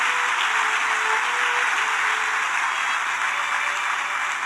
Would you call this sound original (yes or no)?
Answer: yes